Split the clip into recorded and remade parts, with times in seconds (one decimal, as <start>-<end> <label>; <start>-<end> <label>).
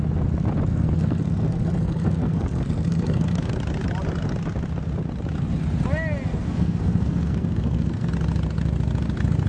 0.0-0.7 recorded; 0.7-3.5 remade; 3.5-6.3 recorded; 6.3-8.1 remade; 8.1-9.5 recorded